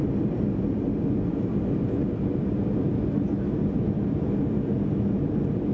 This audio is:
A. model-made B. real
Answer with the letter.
B